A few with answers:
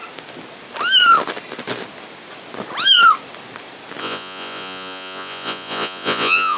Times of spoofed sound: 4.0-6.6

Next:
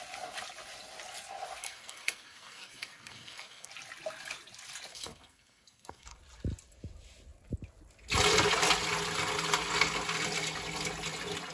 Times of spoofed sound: 1.6-3.7; 4.9-6.2

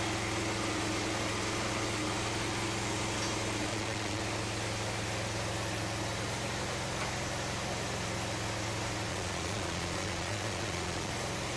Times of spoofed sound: 3.7-4.2; 9.1-11.1

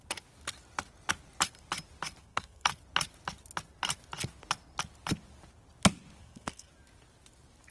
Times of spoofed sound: 2.2-2.7; 6.2-6.7

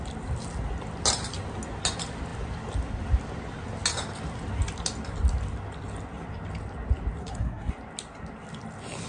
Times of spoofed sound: 7.2-7.7

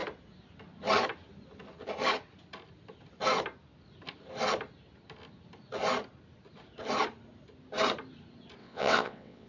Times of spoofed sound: 8.6-9.5